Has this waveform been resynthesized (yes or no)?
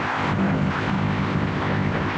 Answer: yes